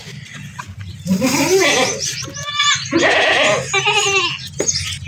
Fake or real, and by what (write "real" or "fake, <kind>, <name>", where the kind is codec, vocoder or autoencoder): real